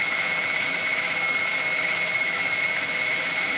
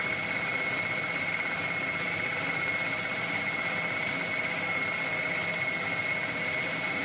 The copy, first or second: first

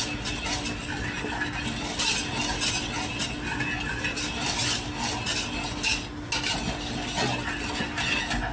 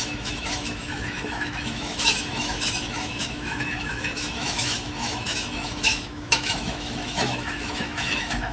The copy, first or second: second